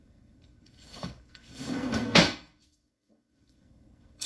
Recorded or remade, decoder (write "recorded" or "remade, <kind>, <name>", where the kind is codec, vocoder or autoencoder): remade, codec, SNAC